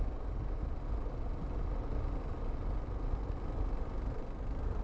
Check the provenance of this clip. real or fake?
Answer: real